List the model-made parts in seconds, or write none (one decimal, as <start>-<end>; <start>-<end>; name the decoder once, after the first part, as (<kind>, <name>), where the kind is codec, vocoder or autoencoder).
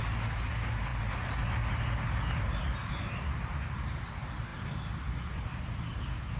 none